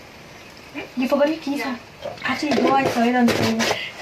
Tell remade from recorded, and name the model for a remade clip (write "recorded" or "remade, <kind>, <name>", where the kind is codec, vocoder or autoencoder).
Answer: recorded